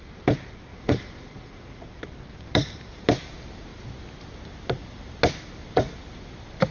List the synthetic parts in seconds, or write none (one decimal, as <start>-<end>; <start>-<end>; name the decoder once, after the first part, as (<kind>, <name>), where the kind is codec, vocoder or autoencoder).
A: 0.7-1.8 (vocoder, Vocos)